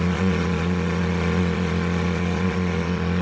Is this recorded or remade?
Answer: remade